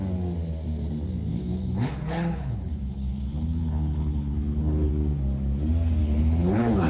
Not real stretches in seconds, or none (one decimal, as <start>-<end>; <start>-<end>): 1.3-4.9; 6.0-6.9